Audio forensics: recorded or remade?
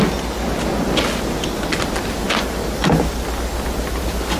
recorded